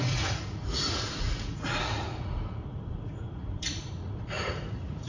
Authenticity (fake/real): fake